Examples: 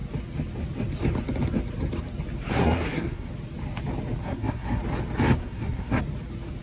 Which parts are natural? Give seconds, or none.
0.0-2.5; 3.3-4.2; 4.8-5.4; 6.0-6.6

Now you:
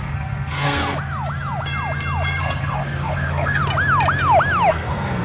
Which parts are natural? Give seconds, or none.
0.8-2.4; 3.6-4.7

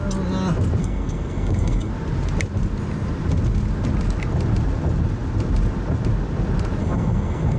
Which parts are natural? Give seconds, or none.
0.0-0.8; 1.9-6.8

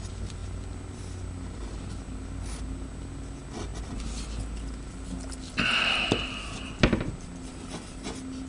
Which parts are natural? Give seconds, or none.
0.0-8.5